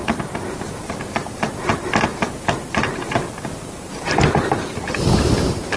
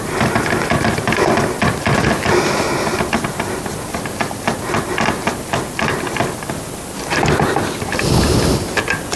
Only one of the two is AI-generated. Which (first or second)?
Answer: first